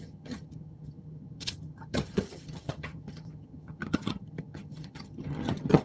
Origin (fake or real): fake